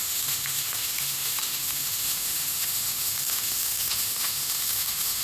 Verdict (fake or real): fake